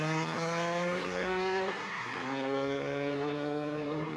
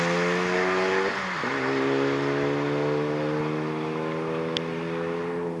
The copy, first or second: first